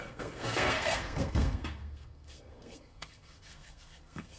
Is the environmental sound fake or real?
fake